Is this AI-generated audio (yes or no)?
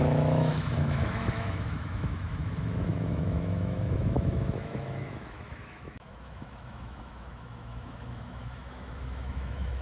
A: yes